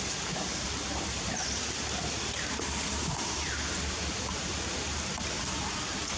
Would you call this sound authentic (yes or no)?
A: no